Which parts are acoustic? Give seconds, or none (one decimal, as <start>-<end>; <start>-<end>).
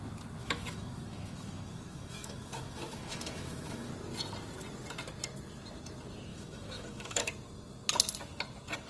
0.0-0.4; 3.9-6.3; 7.3-8.9